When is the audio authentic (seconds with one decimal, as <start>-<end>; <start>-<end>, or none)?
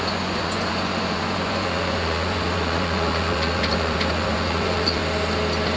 5.0-5.8